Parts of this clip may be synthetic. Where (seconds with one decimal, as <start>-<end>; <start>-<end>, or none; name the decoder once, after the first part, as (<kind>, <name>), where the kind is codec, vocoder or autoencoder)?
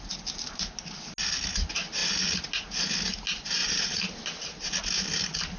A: 3.6-4.7 (vocoder, BigVGAN v2)